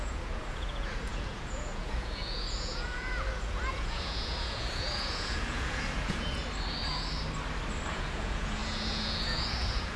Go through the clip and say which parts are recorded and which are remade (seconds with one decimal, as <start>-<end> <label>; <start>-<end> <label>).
0.0-6.4 remade; 6.4-7.9 recorded; 7.9-10.0 remade